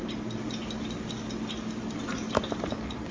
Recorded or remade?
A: recorded